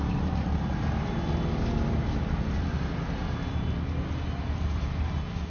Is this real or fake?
real